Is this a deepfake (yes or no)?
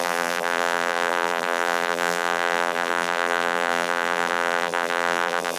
yes